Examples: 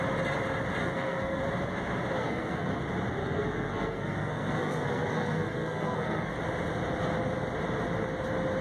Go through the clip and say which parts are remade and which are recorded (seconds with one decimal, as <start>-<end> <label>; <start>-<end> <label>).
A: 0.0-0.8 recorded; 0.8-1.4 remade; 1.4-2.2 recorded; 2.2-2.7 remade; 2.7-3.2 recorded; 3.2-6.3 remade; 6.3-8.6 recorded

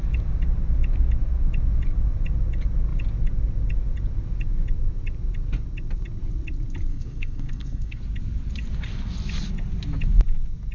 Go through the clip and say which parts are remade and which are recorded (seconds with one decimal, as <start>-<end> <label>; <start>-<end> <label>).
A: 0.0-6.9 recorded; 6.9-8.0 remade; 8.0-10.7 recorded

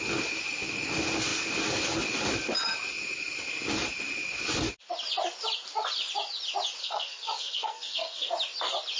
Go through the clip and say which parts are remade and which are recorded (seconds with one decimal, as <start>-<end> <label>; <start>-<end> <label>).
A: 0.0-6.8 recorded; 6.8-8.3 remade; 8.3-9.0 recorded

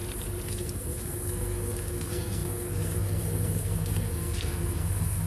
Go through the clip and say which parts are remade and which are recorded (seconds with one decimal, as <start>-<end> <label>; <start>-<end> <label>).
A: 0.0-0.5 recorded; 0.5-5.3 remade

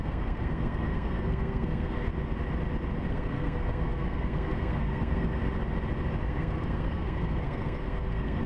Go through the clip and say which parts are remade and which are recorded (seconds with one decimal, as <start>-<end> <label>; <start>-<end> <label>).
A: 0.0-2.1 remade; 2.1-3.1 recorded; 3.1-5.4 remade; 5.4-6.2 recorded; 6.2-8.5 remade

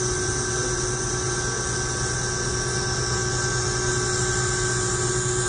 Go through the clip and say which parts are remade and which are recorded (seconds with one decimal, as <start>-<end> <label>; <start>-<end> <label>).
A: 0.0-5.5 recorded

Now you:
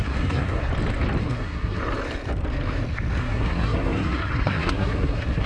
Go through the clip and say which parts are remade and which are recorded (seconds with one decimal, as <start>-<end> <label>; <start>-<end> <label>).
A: 0.0-0.7 remade; 0.7-1.2 recorded; 1.2-1.8 remade; 1.8-3.2 recorded; 3.2-5.5 remade

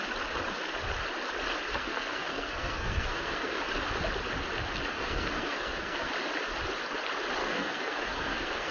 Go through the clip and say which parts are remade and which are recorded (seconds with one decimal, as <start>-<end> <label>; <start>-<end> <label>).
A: 0.0-1.7 recorded; 1.7-3.6 remade; 3.6-4.9 recorded; 4.9-6.1 remade; 6.1-7.4 recorded; 7.4-8.7 remade